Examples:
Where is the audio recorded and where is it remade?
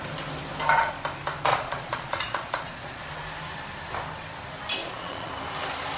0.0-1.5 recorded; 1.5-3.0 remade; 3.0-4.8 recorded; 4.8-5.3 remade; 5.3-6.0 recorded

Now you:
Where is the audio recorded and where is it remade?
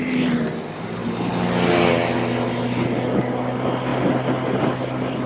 0.0-5.3 recorded